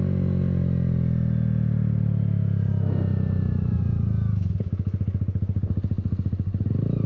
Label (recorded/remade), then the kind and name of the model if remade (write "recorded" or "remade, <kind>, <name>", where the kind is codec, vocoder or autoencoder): recorded